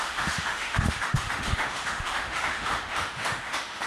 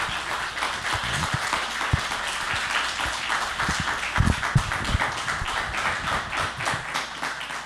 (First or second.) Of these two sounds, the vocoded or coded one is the first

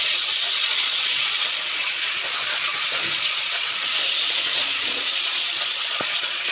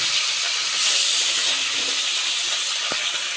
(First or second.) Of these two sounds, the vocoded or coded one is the first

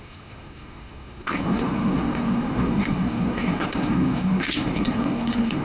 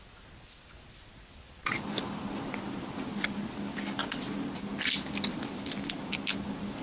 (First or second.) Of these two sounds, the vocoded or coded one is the first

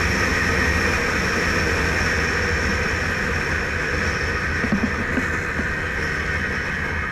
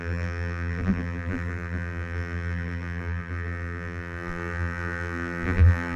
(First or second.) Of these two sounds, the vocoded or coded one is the second